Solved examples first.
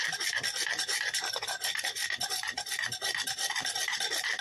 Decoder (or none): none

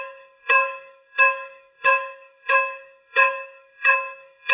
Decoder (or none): codec, SNAC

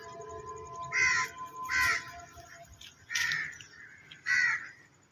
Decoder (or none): none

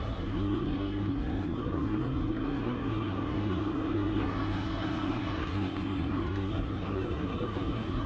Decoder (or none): codec, SNAC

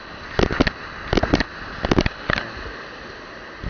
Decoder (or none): none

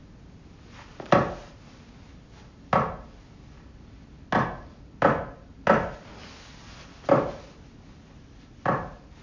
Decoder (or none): none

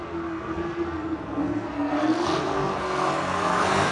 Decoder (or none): codec, SNAC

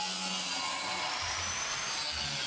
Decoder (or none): none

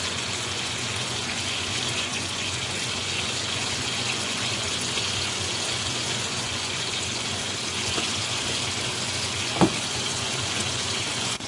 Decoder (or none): vocoder, Vocos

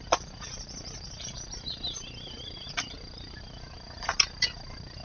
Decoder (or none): vocoder, BigVGAN v2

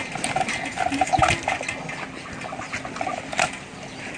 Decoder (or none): none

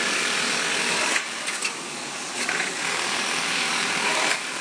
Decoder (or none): codec, DAC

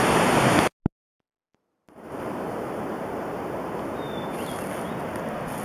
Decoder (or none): none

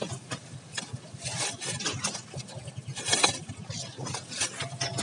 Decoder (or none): none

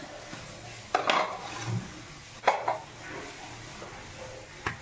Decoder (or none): none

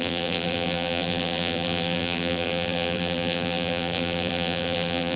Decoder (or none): vocoder, BigVGAN v2